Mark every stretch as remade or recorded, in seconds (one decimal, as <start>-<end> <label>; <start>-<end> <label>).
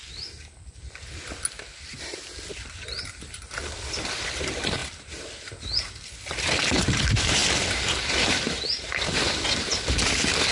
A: 0.0-10.5 recorded